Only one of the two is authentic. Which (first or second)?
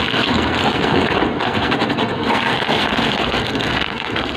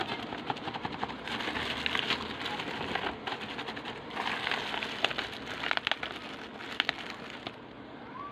second